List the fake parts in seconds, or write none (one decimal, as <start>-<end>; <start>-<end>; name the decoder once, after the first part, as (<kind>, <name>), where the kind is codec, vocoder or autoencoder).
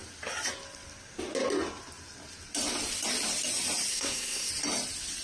3.9-4.5 (codec, SNAC)